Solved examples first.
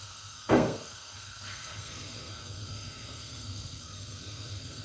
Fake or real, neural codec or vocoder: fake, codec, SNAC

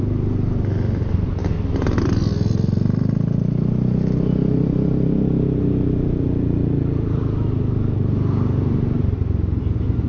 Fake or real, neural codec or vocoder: real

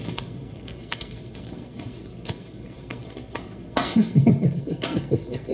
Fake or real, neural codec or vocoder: fake, codec, SNAC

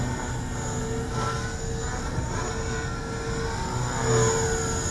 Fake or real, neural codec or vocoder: real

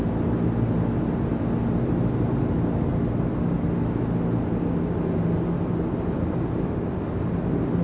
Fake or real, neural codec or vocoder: real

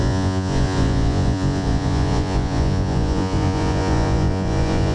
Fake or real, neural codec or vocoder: fake, vocoder, Vocos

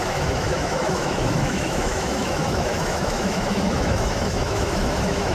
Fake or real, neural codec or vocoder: fake, autoencoder, DAC-VAE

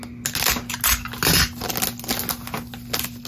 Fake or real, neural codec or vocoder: real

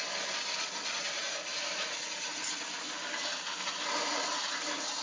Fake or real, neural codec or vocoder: real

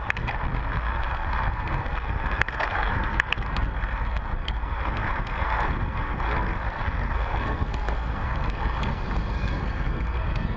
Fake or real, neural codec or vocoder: fake, codec, SNAC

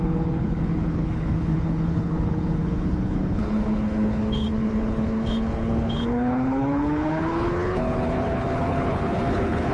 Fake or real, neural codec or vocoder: fake, codec, HILCodec